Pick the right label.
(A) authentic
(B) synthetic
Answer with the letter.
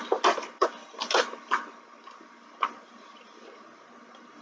A